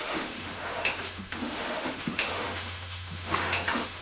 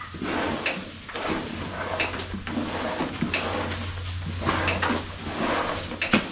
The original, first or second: second